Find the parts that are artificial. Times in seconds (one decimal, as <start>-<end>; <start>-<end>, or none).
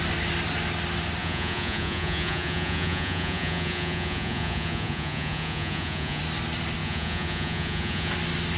1.2-6.2; 6.8-8.1